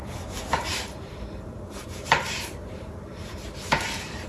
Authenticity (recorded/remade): remade